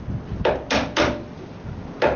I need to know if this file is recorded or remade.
recorded